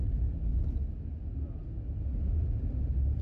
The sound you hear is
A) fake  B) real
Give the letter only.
B